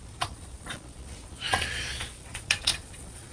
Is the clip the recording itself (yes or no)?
no